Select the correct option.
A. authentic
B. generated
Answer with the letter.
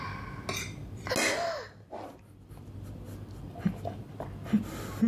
A